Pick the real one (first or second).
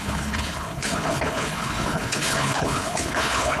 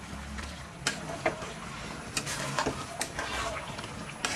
second